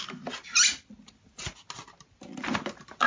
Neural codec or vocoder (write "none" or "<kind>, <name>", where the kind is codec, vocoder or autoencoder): none